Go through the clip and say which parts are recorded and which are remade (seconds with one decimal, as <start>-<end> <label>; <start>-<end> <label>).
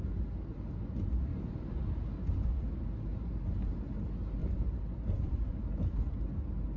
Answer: 0.0-1.3 recorded; 1.3-1.8 remade; 1.8-3.1 recorded; 3.1-3.6 remade; 3.6-4.4 recorded; 4.4-6.0 remade; 6.0-6.8 recorded